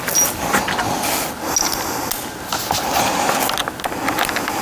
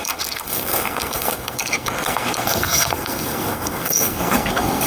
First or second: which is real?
first